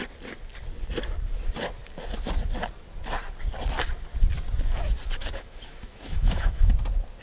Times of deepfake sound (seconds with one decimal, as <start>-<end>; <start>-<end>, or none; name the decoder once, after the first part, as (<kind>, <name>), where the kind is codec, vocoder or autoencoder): 5.2-6.7 (autoencoder, DAC-VAE)